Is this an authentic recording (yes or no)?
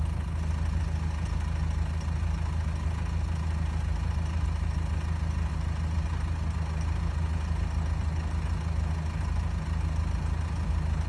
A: yes